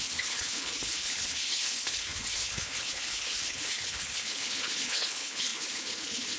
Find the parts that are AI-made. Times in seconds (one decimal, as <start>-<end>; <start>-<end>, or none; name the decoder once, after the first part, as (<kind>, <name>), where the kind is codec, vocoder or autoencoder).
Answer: 0.0-6.4 (codec, HILCodec)